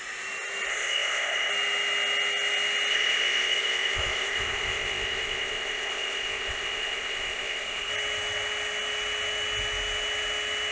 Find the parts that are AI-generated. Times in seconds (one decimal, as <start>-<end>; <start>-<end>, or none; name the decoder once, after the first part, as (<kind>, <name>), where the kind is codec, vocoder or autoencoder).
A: 0.7-1.5 (codec, ZipCodec); 2.9-7.9